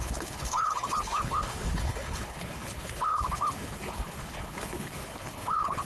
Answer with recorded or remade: remade